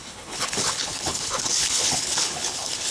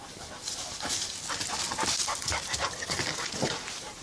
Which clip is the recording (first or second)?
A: second